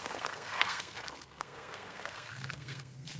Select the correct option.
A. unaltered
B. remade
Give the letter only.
B